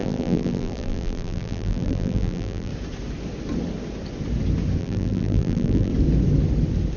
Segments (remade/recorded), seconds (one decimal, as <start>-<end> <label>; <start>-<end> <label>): 0.0-2.7 remade; 2.7-4.8 recorded; 4.8-5.9 remade; 5.9-7.0 recorded